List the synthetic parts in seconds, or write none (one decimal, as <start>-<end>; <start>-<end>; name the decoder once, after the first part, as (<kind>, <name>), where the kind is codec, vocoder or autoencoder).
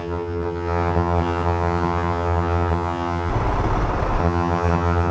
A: 0.0-3.3 (vocoder, HiFi-GAN); 4.2-5.1